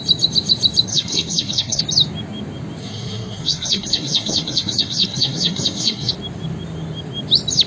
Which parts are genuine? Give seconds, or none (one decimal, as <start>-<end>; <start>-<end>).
0.0-0.9; 1.8-2.8; 6.1-7.7